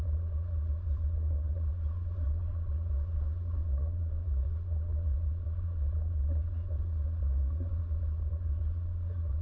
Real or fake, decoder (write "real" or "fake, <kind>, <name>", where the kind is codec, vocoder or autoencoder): fake, vocoder, Vocos